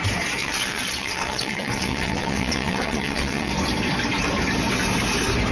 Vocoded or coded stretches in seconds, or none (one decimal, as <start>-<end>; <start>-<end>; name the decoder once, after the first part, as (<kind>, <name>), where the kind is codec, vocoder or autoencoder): 0.4-3.5 (vocoder, WaveNeXt)